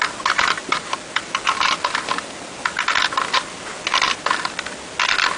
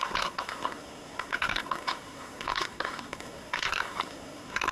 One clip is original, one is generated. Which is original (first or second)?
first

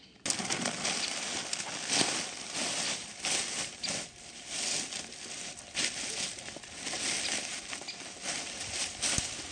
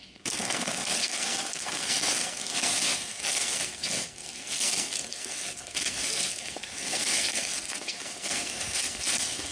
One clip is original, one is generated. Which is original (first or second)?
first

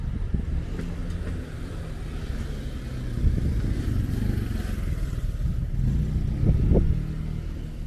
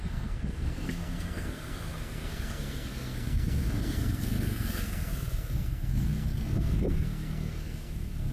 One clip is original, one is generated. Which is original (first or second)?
first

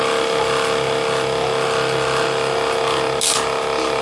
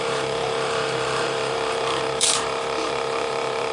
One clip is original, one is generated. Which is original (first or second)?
first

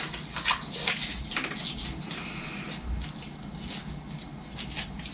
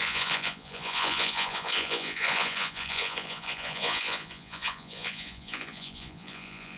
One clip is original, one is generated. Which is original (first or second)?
first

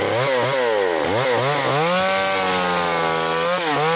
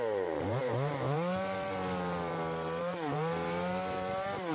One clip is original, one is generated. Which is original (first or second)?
first